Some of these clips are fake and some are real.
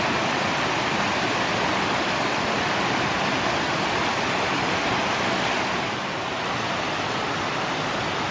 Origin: real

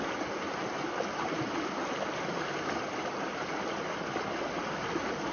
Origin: real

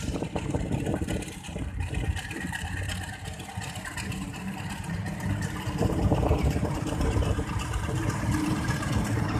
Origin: fake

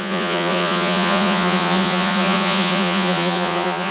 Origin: fake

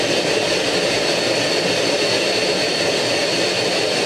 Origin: real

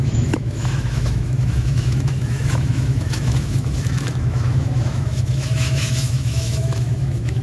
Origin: fake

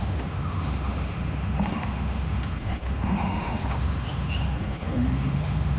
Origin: fake